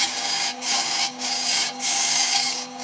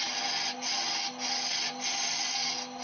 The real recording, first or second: second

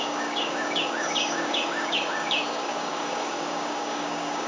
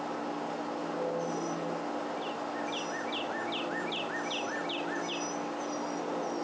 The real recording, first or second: second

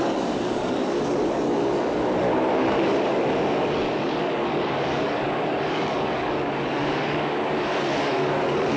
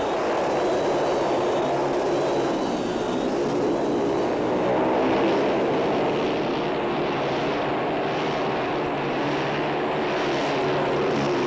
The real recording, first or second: second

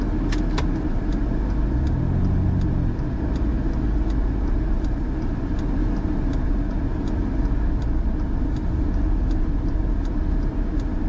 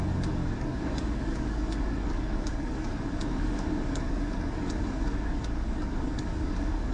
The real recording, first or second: first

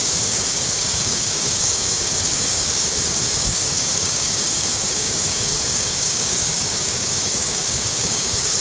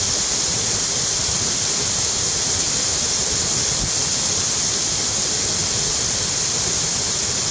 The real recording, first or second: second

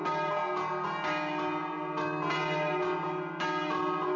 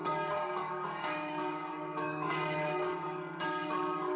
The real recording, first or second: first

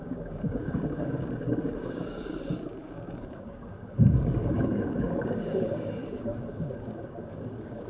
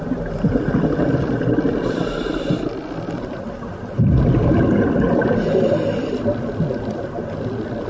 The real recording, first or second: second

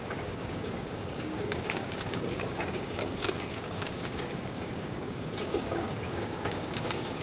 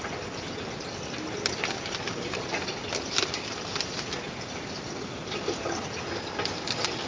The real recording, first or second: second